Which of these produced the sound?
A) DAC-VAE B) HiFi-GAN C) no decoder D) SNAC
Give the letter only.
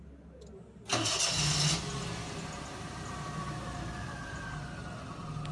C